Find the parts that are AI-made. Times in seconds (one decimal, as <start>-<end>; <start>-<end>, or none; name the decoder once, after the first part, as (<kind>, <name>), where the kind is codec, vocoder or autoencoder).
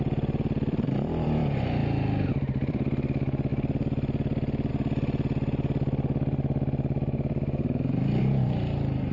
0.0-1.8 (vocoder, BigVGAN v2); 2.3-9.1